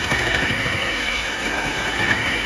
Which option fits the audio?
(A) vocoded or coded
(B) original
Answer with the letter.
A